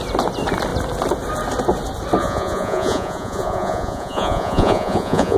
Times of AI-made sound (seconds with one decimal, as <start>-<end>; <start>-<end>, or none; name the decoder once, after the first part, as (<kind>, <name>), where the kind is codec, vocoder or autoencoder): 2.2-5.4 (vocoder, Vocos)